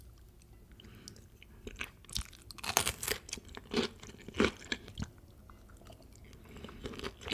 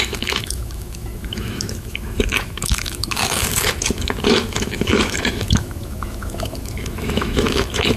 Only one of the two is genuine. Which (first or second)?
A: first